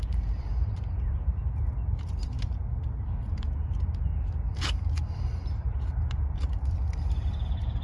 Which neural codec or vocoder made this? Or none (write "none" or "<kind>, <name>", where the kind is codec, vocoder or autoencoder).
vocoder, BigVGAN v2